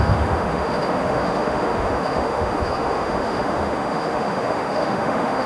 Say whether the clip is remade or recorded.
remade